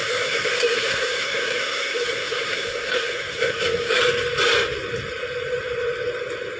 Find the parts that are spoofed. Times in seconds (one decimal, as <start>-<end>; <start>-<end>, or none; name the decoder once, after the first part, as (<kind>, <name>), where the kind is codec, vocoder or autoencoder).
0.0-4.0 (codec, SNAC)